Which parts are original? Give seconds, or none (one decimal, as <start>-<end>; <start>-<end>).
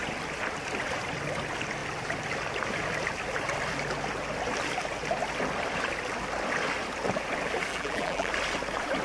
0.0-7.7; 8.3-9.0